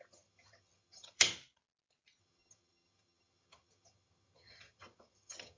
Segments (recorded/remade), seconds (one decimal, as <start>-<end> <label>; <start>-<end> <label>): 0.0-1.3 remade; 1.3-2.2 recorded; 2.2-5.6 remade